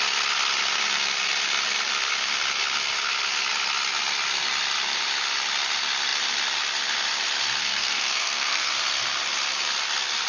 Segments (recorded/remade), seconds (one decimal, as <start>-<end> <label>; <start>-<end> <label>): 0.0-7.6 recorded; 7.6-8.7 remade; 8.7-10.3 recorded